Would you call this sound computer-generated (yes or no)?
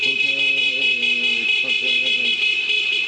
no